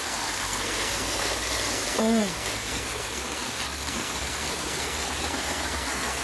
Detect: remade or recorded remade